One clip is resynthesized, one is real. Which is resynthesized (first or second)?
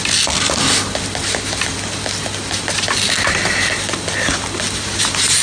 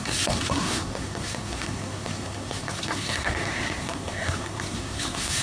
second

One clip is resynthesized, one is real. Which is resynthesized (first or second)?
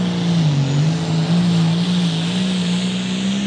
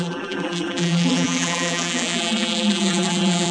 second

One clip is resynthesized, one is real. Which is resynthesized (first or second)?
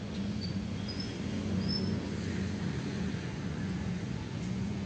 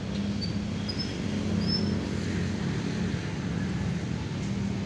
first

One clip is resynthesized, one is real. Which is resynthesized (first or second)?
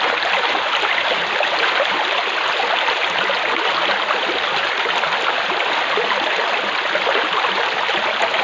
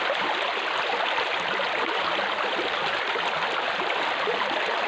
second